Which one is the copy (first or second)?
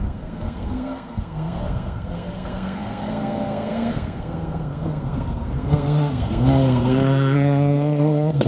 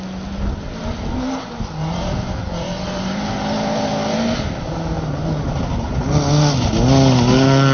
first